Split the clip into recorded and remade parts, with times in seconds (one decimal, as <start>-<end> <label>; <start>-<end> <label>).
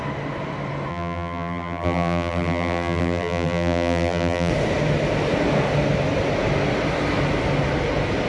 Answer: 0.0-0.9 recorded; 0.9-4.5 remade; 4.5-8.3 recorded